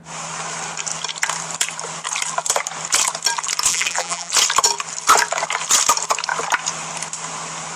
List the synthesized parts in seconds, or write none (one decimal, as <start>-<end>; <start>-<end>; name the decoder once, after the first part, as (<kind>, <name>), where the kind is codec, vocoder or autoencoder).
3.7-4.3 (vocoder, BigVGAN v2)